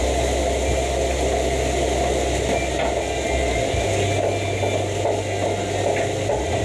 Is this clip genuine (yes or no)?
yes